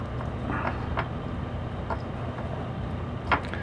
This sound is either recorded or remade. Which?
recorded